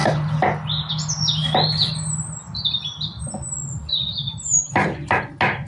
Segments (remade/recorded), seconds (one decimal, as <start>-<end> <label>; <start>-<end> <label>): 0.0-5.7 recorded